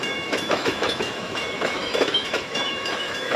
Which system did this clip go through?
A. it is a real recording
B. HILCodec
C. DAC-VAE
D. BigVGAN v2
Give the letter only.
C